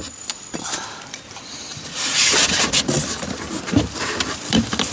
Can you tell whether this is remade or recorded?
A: remade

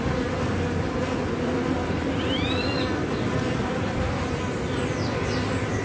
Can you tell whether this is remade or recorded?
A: recorded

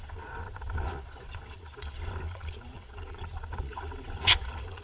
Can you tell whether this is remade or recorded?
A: remade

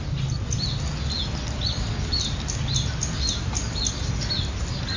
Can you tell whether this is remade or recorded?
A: recorded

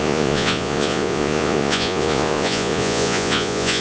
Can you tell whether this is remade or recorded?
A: remade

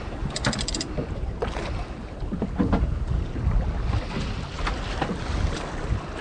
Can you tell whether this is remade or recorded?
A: recorded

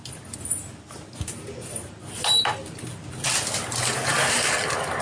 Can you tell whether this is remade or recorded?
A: recorded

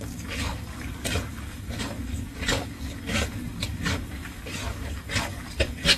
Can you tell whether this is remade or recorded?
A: remade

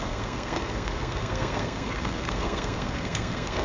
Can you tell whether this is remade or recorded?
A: remade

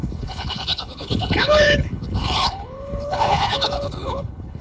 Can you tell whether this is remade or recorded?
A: remade